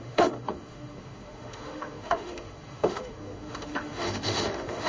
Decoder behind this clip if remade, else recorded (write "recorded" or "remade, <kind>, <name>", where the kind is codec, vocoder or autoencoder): remade, autoencoder, DAC-VAE